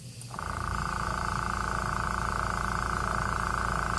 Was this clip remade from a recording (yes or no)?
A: no